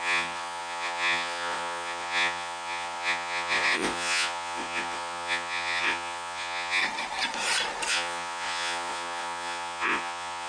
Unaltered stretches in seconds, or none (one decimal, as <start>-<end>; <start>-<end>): 6.8-7.9